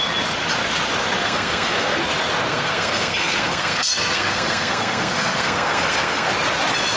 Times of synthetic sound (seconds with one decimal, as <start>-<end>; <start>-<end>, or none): 1.2-2.0; 2.5-6.3